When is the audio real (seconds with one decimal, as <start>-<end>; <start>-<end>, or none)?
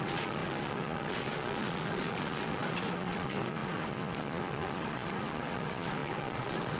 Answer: none